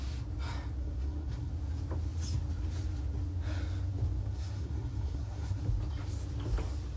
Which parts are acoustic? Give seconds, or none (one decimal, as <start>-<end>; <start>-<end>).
0.0-0.8; 1.5-4.2; 5.6-7.0